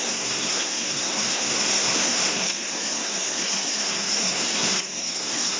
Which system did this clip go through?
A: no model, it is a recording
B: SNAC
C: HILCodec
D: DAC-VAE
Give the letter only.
B